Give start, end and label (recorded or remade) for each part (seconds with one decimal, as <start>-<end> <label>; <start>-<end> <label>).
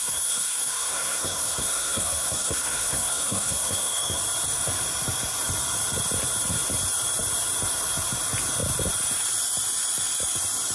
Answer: 0.0-4.2 remade; 4.2-10.7 recorded